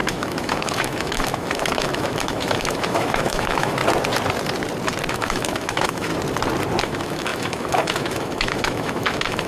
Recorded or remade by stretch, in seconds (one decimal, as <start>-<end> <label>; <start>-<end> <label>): 0.0-3.8 remade; 3.8-5.1 recorded; 5.1-6.1 remade; 6.1-6.8 recorded; 6.8-9.5 remade